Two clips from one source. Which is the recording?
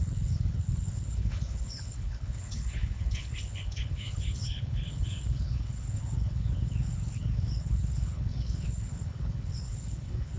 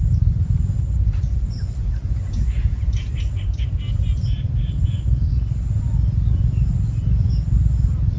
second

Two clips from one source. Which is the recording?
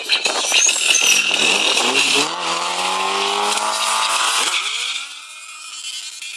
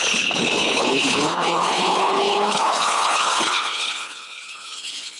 first